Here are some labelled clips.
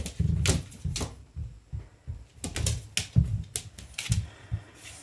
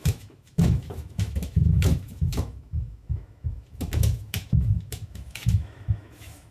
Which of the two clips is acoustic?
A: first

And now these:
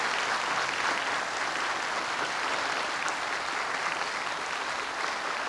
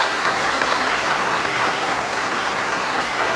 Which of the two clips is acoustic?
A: first